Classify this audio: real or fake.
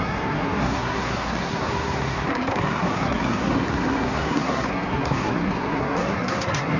fake